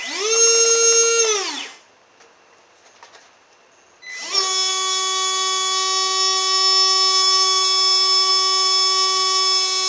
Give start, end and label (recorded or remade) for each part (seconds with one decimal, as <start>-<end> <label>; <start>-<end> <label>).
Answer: 0.0-9.9 recorded